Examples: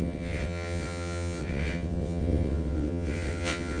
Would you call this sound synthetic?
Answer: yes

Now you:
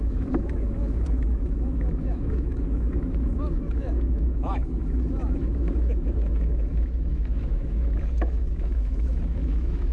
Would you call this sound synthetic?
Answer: yes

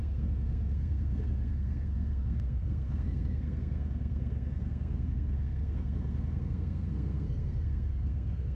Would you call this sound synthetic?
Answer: yes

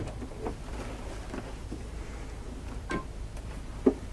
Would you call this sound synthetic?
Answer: no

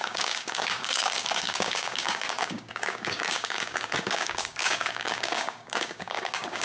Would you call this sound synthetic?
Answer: yes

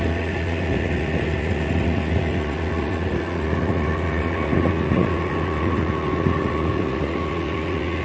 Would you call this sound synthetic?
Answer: yes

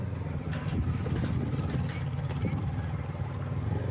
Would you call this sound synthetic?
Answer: no